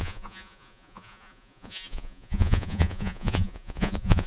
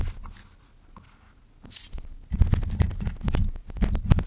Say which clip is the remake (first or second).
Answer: first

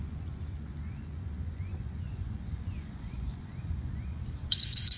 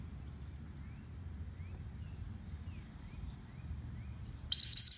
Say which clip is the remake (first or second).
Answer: first